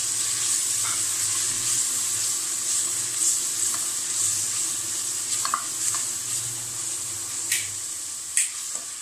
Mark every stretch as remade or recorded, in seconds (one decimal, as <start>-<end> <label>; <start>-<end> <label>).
0.0-9.0 recorded